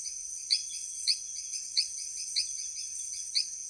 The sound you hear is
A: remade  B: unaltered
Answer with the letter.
A